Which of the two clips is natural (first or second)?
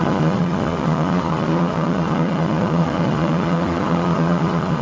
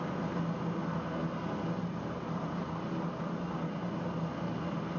second